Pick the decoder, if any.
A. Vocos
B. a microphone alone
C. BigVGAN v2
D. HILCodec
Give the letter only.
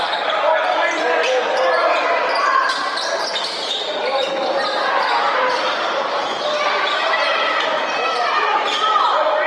C